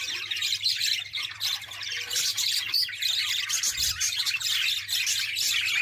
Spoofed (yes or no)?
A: yes